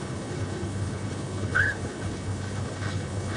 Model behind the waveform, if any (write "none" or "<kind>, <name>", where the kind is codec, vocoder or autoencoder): codec, HILCodec